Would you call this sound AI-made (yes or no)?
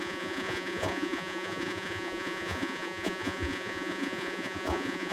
yes